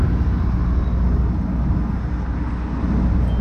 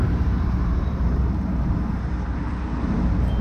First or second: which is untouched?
first